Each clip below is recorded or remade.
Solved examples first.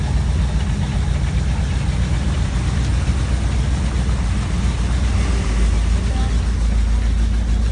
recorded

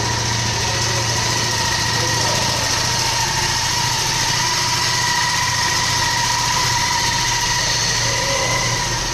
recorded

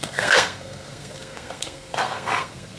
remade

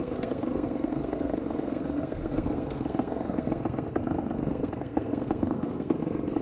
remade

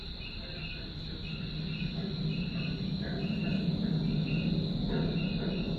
recorded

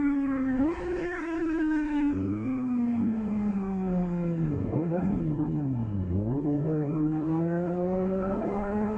remade